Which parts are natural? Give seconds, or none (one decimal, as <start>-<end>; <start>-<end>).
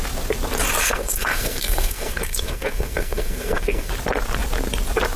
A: 0.0-0.8; 3.9-5.2